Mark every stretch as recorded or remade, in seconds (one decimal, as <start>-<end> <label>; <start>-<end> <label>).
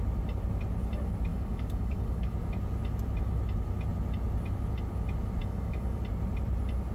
0.0-1.3 recorded; 1.3-2.3 remade; 2.3-5.4 recorded; 5.4-6.0 remade; 6.0-6.9 recorded